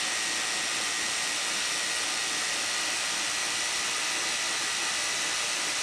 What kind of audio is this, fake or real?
real